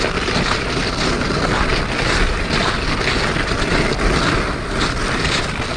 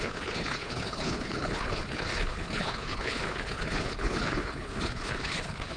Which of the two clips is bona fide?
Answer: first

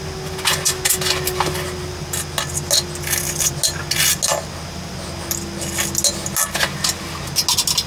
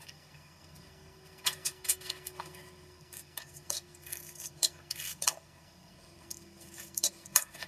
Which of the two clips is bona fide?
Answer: first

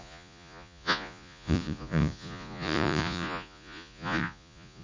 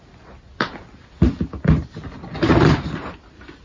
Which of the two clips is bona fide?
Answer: second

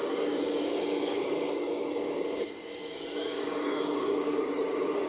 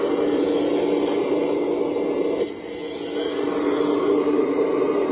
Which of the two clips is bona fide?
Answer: second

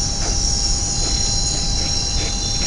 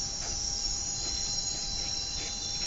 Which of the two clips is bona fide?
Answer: first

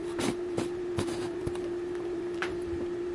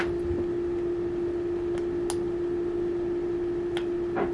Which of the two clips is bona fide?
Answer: second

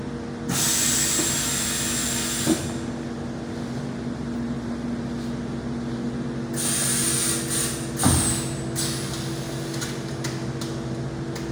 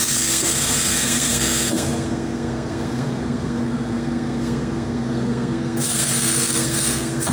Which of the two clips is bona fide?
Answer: first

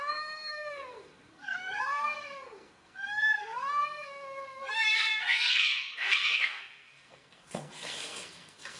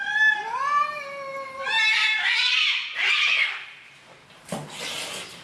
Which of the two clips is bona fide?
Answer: second